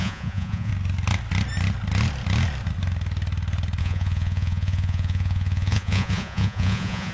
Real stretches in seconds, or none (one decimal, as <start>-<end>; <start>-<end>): 0.7-3.8